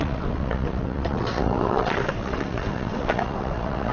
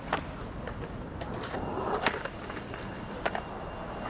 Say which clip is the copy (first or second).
first